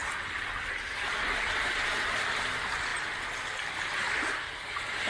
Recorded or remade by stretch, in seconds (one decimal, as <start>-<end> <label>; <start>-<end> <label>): 0.0-5.1 recorded